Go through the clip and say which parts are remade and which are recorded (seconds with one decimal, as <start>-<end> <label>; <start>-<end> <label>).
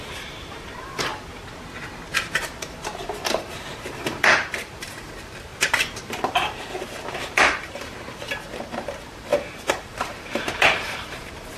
0.0-1.1 remade; 1.1-2.3 recorded; 2.3-11.6 remade